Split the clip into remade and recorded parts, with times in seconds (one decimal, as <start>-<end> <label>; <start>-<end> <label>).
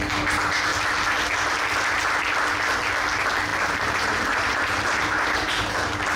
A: 0.0-3.5 recorded; 3.5-5.7 remade; 5.7-6.2 recorded